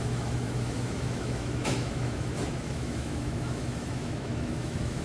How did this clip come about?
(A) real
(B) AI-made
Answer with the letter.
B